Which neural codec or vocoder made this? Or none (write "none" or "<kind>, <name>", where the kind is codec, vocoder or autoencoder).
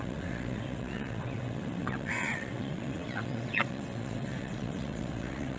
vocoder, WaveNeXt